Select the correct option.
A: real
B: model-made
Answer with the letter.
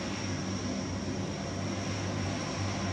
A